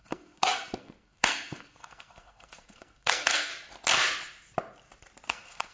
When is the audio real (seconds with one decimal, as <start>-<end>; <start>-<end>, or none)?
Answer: 3.5-5.3